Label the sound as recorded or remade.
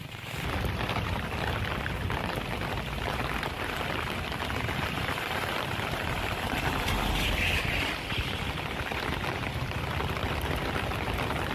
remade